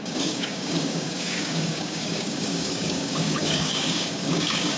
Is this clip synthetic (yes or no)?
yes